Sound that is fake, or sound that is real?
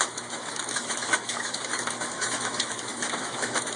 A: fake